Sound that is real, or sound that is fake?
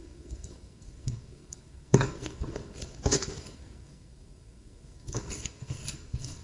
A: fake